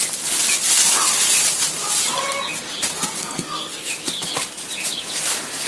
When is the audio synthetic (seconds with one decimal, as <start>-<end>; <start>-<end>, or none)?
3.2-3.9